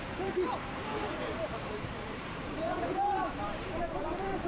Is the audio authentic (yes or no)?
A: no